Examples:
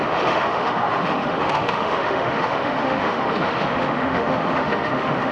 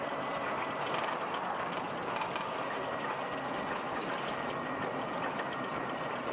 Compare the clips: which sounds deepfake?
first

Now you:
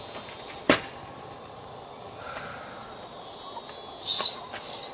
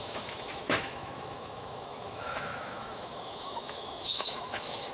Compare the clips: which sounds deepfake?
second